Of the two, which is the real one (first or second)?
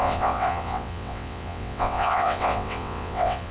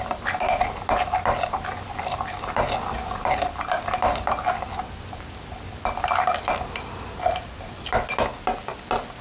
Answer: second